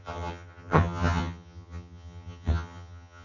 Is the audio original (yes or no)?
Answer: no